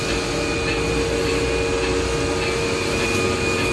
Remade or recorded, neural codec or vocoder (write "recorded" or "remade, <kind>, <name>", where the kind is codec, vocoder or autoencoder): recorded